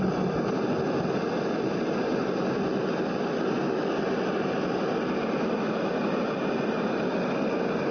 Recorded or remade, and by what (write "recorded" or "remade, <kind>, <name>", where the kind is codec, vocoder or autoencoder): recorded